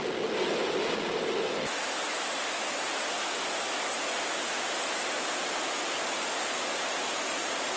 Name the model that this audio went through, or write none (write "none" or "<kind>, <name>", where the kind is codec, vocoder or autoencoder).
none